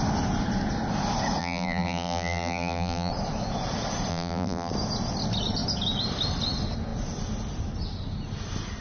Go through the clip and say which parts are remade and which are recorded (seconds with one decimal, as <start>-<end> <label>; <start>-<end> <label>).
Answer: 0.0-1.4 recorded; 1.4-3.1 remade; 3.1-4.1 recorded; 4.1-4.7 remade; 4.7-8.8 recorded